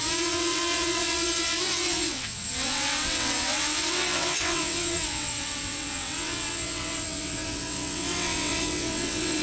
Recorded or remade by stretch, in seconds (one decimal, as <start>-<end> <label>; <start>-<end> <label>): 0.0-9.4 remade